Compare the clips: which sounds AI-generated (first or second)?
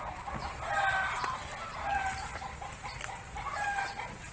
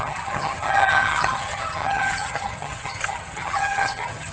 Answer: second